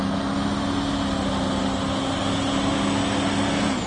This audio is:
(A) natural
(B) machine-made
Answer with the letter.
A